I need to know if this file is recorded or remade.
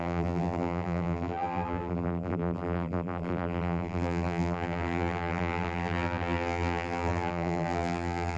remade